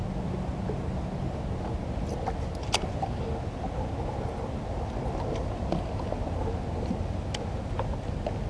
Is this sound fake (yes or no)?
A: no